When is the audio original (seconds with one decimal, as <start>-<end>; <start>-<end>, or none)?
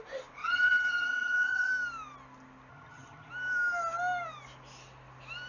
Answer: 0.0-0.4; 1.7-2.7; 3.3-5.5